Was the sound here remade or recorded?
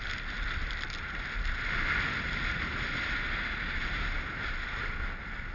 recorded